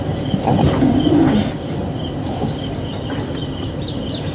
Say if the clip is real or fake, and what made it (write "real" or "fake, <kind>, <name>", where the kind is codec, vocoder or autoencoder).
real